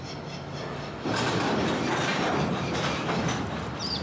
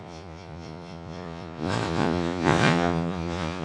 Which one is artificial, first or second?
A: second